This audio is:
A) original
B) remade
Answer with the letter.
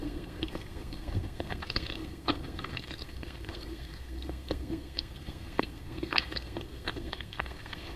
B